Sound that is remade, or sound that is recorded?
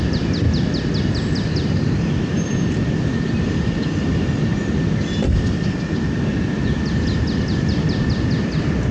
recorded